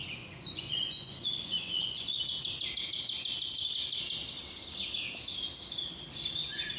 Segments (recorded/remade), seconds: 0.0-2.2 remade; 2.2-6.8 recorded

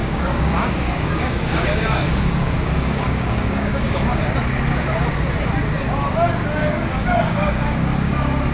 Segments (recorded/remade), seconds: 0.0-4.2 remade; 4.2-6.6 recorded; 6.6-8.1 remade; 8.1-8.5 recorded

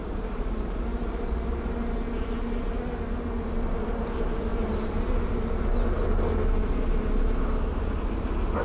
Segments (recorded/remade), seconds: 0.0-1.6 remade; 1.6-4.5 recorded; 4.5-5.3 remade; 5.3-8.6 recorded

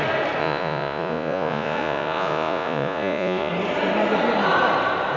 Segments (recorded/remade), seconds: 0.0-0.4 recorded; 0.4-3.5 remade; 3.5-5.2 recorded